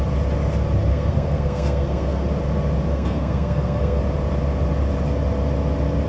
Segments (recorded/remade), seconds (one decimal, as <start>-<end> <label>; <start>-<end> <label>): 0.0-0.9 recorded; 0.9-2.3 remade; 2.3-2.9 recorded; 2.9-4.0 remade; 4.0-6.1 recorded